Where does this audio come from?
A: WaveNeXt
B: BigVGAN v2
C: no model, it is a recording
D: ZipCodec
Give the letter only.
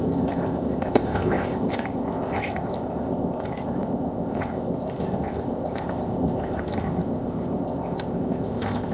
D